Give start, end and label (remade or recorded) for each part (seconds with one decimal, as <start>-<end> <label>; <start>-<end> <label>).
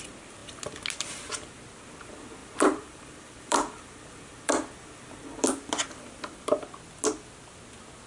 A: 0.0-2.4 recorded; 2.4-6.4 remade; 6.4-8.1 recorded